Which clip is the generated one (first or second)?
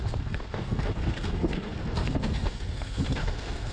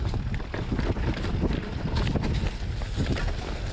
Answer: first